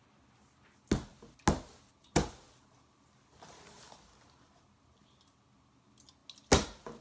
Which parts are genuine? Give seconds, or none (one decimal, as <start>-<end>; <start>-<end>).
0.0-7.0